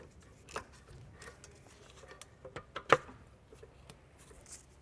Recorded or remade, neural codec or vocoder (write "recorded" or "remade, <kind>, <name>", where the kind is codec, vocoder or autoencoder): recorded